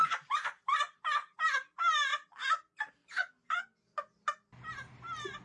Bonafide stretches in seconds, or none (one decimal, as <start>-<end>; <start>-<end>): 1.4-5.4